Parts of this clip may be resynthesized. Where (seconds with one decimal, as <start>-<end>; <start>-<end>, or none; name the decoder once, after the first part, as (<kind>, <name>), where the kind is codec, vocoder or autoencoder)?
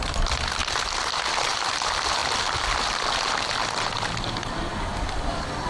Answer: none